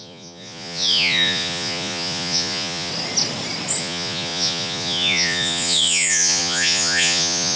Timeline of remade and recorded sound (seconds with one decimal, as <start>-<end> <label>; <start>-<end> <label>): 0.0-2.9 remade; 2.9-3.8 recorded; 3.8-7.6 remade